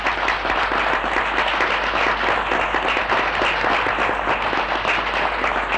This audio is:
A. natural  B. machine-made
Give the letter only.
A